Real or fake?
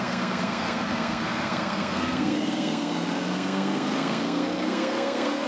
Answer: fake